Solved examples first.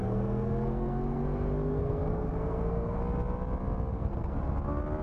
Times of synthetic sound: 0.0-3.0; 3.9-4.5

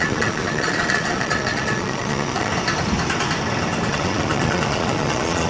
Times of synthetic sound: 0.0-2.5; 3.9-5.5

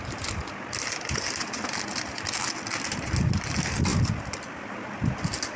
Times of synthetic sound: none

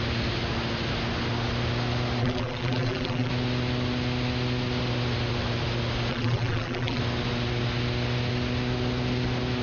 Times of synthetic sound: 2.2-3.3; 6.1-7.0